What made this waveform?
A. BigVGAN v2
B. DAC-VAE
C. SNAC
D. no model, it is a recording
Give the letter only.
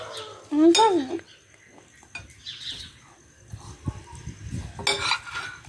D